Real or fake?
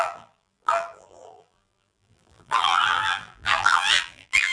fake